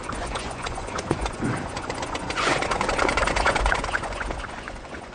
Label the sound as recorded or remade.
remade